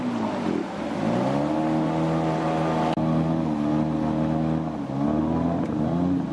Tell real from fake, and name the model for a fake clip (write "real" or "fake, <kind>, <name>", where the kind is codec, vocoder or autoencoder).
real